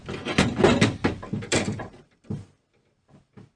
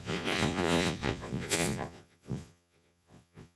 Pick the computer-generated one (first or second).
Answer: second